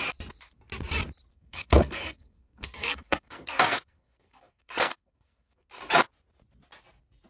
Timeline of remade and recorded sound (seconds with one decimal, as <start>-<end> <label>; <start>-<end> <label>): 0.0-1.3 recorded; 1.3-5.7 remade; 5.7-7.3 recorded

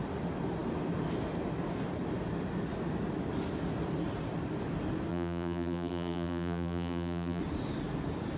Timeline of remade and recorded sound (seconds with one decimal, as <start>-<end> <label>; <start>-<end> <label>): 0.0-5.1 recorded; 5.1-7.4 remade; 7.4-8.4 recorded

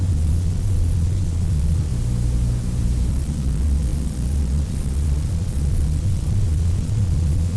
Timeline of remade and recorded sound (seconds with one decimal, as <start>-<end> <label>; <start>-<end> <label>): 0.0-1.9 remade; 1.9-3.1 recorded; 3.1-7.6 remade

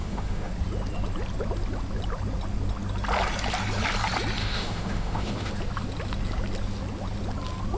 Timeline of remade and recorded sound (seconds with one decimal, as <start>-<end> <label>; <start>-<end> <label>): 0.0-0.5 remade; 0.5-4.4 recorded; 4.4-5.5 remade; 5.5-7.8 recorded

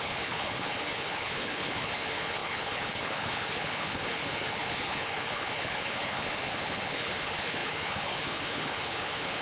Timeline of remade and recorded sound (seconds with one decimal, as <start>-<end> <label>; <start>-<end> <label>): 0.0-9.4 remade

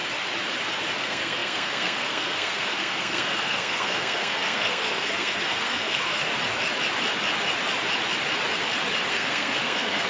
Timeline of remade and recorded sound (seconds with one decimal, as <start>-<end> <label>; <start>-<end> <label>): 0.0-1.0 recorded; 1.0-6.3 remade; 6.3-9.1 recorded; 9.1-10.1 remade